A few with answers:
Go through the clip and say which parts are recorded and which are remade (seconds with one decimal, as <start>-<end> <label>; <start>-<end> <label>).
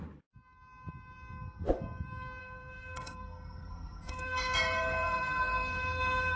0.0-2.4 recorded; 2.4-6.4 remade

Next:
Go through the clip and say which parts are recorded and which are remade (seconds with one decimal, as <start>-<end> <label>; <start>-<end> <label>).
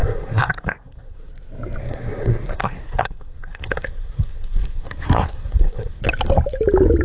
0.0-1.3 remade; 1.3-1.8 recorded; 1.8-6.0 remade; 6.0-7.0 recorded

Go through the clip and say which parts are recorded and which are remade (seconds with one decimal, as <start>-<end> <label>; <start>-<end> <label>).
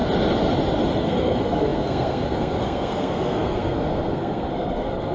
0.0-1.0 recorded; 1.0-5.1 remade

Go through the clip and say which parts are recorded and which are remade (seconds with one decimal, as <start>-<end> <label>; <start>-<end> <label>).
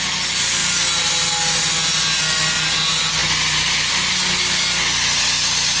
0.0-5.8 recorded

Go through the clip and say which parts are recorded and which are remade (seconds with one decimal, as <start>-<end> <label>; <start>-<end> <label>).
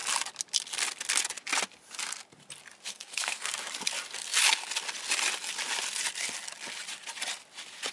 0.0-2.9 recorded; 2.9-3.5 remade; 3.5-7.9 recorded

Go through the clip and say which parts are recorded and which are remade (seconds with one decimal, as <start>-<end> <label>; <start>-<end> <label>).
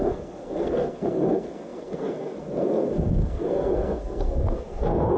0.0-5.2 remade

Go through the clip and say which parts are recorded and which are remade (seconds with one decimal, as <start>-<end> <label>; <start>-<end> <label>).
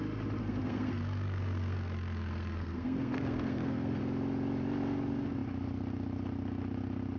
0.0-0.4 recorded; 0.4-4.0 remade; 4.0-7.2 recorded